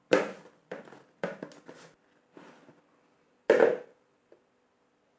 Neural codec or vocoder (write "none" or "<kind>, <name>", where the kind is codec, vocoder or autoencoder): none